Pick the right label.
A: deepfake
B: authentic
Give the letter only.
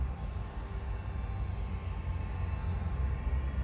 B